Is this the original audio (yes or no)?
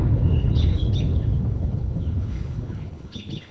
no